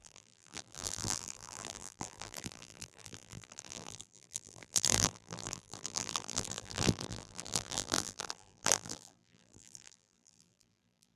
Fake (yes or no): yes